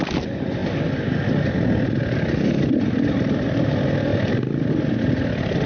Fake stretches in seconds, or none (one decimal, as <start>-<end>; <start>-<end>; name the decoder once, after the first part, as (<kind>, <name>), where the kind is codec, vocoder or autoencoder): 0.0-0.6 (vocoder, BigVGAN v2); 2.8-4.1; 4.7-5.7